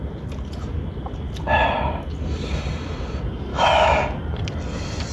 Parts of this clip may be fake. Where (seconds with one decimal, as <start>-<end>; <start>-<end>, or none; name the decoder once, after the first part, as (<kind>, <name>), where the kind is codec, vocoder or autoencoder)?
3.5-4.0 (autoencoder, DAC-VAE)